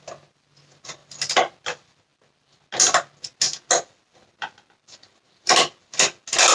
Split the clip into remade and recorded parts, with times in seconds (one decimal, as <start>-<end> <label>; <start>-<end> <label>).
0.0-6.5 recorded